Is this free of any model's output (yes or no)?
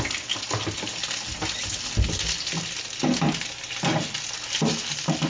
yes